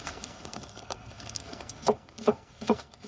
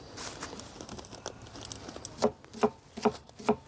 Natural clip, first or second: second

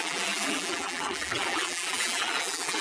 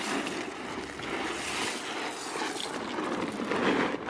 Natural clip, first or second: second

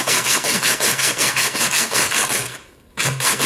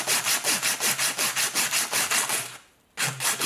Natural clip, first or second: second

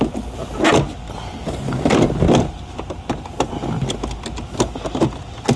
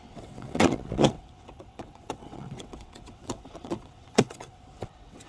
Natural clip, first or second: first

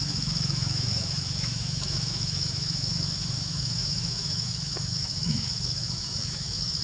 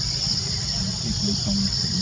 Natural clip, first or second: second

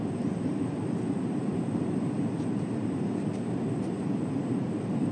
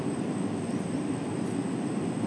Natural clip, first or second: second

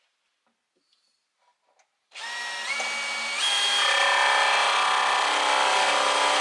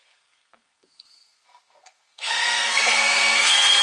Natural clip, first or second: first